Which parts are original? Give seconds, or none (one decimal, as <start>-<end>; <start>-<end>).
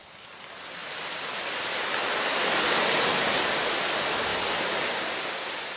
0.0-0.8; 2.1-5.8